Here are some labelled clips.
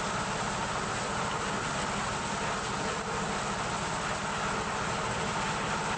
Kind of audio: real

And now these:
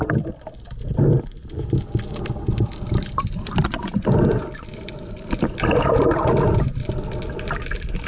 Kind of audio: fake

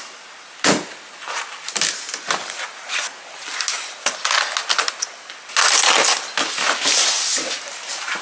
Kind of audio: real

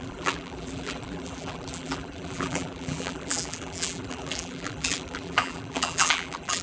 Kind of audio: fake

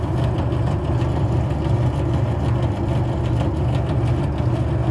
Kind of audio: real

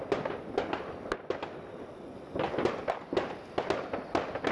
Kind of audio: real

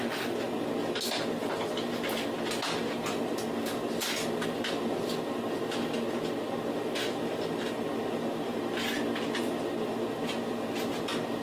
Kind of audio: real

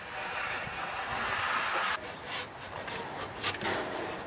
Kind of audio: real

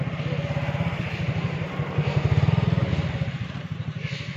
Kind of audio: real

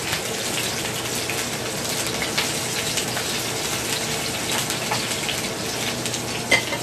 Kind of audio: real